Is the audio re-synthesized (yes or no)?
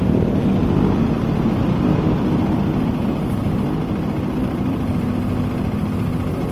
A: no